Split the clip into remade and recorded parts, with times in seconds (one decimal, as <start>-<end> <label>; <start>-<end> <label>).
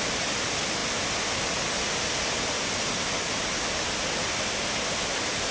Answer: 0.0-5.5 recorded